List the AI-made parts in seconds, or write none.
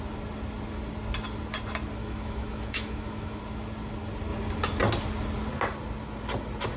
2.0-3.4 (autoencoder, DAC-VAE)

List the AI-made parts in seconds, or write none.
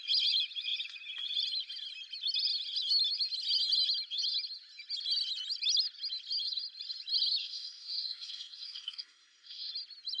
7.4-9.7 (codec, SNAC)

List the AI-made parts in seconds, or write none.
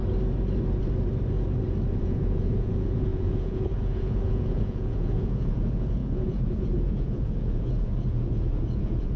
1.9-9.2 (vocoder, Vocos)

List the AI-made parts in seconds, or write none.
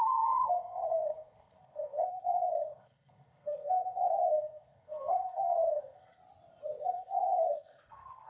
0.0-6.2 (codec, SNAC); 6.8-8.3